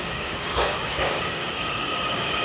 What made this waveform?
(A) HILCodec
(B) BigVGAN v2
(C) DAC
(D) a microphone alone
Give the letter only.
C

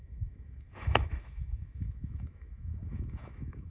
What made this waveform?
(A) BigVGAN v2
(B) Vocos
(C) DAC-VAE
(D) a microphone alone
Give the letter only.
C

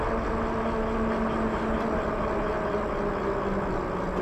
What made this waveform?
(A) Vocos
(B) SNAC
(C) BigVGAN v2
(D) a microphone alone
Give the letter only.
D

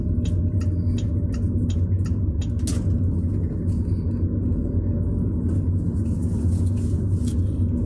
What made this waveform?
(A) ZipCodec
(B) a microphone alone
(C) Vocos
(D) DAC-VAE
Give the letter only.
B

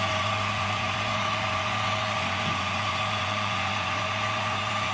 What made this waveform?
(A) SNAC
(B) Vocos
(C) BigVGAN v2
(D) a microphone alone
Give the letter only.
B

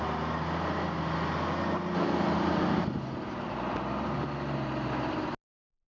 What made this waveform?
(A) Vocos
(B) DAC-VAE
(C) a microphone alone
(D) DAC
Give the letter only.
C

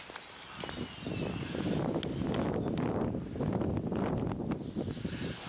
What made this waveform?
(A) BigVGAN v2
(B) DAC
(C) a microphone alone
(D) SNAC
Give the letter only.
C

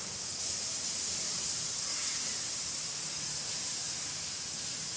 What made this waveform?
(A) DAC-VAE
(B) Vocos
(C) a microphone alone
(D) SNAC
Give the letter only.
C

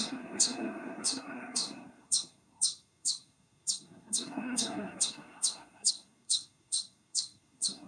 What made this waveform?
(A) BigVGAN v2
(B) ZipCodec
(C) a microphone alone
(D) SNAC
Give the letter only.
D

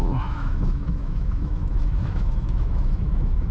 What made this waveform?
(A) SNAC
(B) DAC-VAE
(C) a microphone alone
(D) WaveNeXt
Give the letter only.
B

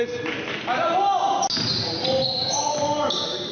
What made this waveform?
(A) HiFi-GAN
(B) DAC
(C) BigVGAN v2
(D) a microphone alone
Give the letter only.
D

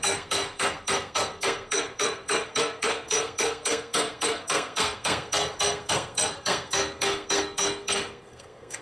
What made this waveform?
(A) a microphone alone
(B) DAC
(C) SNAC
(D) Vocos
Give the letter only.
C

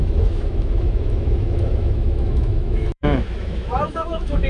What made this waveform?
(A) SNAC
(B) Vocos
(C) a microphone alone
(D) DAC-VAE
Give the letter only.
D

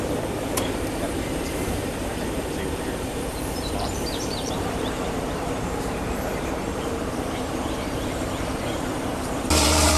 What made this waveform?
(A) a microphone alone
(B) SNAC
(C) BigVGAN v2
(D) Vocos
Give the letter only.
C